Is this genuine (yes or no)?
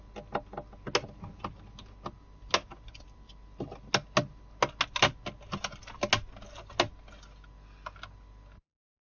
yes